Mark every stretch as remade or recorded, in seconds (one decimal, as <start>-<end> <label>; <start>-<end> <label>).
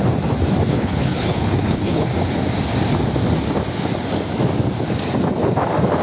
0.0-0.7 recorded; 0.7-2.1 remade; 2.1-6.0 recorded